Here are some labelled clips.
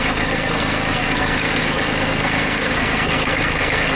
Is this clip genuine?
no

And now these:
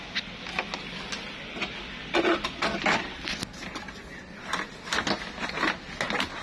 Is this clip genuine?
yes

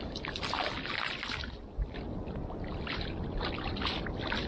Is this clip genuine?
yes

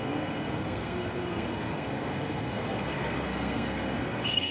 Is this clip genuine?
no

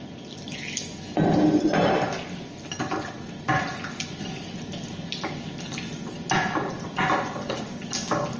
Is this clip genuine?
yes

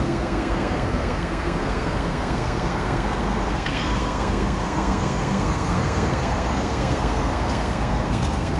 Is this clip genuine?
no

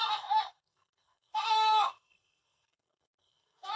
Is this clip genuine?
no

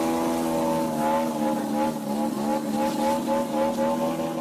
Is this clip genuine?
yes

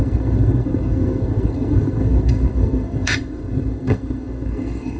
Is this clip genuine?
no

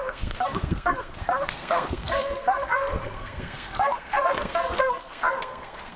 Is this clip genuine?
no